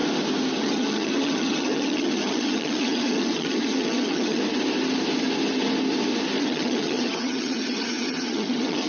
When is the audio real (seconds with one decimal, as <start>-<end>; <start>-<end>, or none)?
0.0-0.6; 4.4-6.4